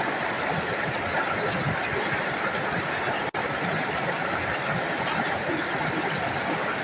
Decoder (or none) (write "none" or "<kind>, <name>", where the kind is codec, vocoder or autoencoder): none